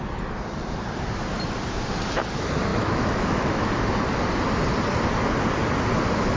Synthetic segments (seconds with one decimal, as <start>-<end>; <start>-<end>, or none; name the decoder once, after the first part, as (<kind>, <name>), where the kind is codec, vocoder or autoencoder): 2.7-3.7 (autoencoder, DAC-VAE)